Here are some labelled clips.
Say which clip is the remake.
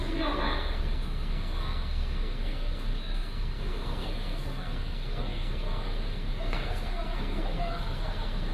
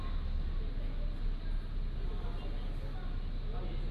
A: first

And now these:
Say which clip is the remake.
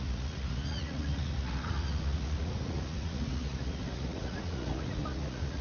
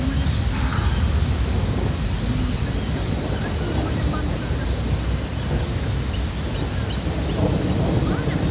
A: first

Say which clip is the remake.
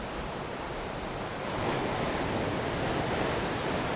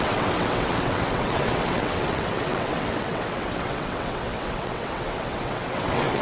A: second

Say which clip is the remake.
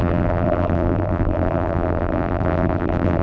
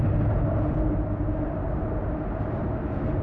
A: first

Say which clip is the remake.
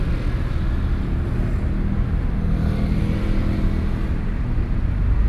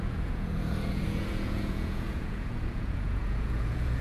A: second